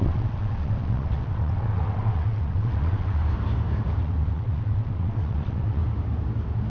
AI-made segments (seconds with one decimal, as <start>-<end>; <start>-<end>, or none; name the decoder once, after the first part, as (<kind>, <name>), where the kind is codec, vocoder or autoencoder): 0.0-3.2 (vocoder, WaveNeXt); 4.0-5.8